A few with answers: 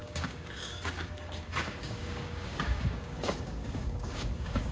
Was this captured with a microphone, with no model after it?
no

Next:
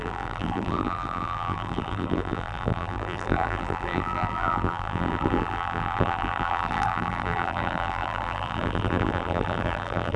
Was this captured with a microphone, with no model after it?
no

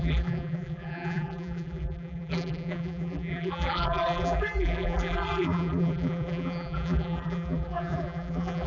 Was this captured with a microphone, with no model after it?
no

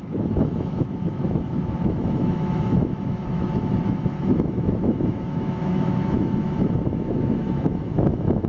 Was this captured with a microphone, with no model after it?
no